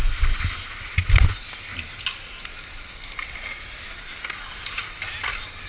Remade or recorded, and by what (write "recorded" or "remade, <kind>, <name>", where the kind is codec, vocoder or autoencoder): recorded